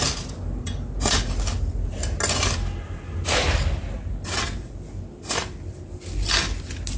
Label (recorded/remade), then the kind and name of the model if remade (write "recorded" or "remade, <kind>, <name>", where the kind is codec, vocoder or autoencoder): recorded